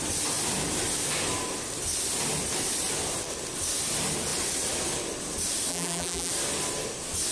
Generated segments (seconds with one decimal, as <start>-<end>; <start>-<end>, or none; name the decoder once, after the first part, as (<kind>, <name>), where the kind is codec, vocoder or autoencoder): 5.7-6.3 (vocoder, BigVGAN v2)